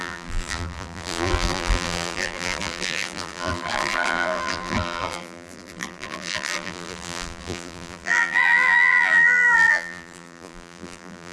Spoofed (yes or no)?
yes